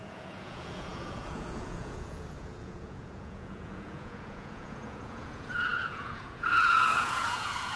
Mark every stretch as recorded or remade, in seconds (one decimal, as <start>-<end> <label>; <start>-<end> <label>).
0.0-7.8 remade